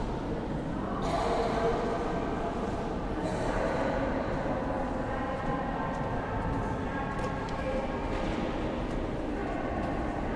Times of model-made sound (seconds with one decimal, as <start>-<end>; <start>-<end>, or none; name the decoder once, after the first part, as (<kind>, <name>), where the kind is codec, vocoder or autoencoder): none